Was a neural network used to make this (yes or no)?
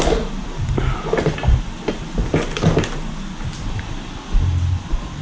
no